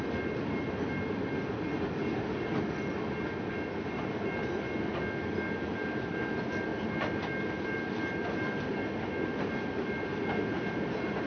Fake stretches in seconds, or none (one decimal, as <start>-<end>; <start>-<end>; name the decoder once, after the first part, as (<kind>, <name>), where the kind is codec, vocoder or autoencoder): none